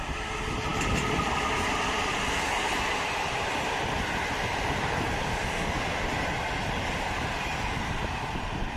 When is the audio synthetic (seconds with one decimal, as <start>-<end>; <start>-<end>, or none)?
0.7-2.2